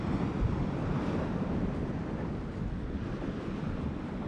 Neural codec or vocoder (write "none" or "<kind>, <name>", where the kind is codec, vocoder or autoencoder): none